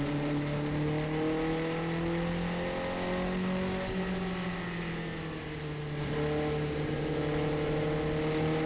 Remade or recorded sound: recorded